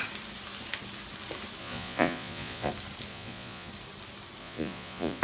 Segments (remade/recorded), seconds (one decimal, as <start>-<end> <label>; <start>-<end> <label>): 0.0-1.6 recorded; 1.6-2.7 remade; 2.7-3.1 recorded; 3.1-3.7 remade; 3.7-4.4 recorded; 4.4-5.2 remade